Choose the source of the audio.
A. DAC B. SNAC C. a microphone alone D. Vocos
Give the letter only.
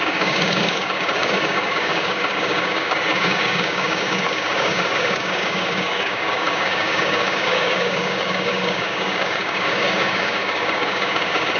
A